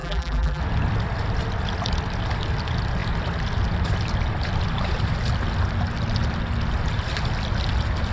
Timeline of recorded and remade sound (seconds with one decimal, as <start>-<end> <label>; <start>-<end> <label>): 0.0-0.6 remade; 0.6-8.1 recorded